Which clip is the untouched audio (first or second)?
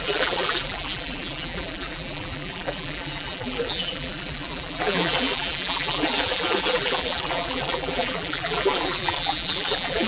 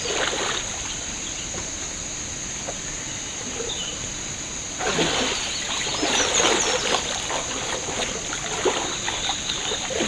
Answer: second